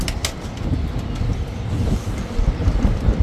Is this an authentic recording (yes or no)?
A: yes